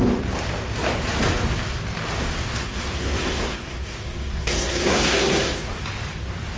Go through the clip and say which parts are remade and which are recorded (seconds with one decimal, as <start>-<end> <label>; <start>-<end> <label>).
0.0-2.6 recorded; 2.6-5.8 remade; 5.8-6.6 recorded